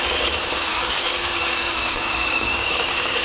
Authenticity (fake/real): fake